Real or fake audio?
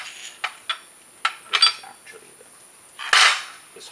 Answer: real